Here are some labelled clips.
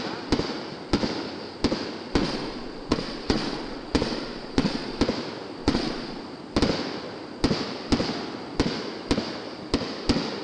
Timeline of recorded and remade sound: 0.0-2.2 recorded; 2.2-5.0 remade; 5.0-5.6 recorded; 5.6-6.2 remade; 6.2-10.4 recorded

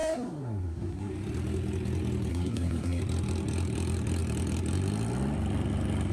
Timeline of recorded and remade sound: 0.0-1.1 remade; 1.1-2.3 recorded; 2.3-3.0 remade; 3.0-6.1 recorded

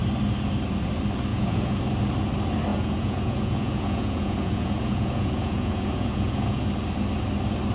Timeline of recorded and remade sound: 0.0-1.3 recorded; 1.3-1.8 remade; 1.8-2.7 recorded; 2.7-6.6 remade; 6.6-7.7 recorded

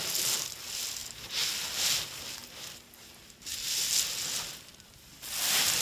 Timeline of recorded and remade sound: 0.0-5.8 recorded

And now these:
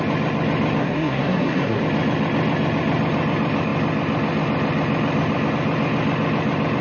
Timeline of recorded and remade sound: 0.0-0.8 recorded; 0.8-1.8 remade; 1.8-6.8 recorded

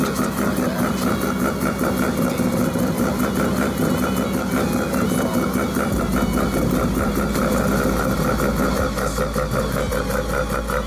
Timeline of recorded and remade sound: 0.0-2.6 recorded; 2.6-3.2 remade; 3.2-10.9 recorded

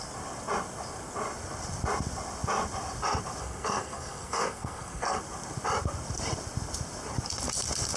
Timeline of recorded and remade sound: 0.0-3.4 recorded; 3.4-5.2 remade; 5.2-8.0 recorded